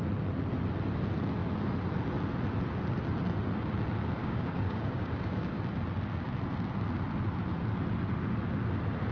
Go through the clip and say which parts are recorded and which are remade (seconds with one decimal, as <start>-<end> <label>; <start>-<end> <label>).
0.0-4.2 recorded; 4.2-5.6 remade; 5.6-9.1 recorded